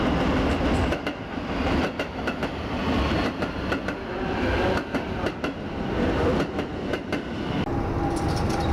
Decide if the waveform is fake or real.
real